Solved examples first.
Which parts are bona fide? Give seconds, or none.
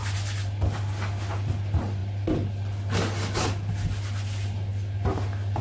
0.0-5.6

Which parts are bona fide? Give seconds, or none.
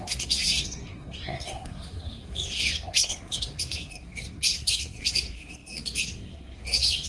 none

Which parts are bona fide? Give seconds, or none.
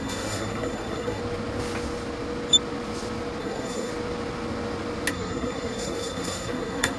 1.2-3.4; 3.9-5.1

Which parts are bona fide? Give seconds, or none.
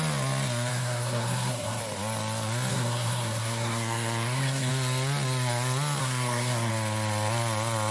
0.0-0.7; 1.8-2.7; 4.7-6.0; 6.7-7.9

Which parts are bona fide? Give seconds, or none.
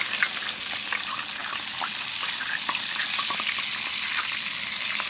0.0-5.1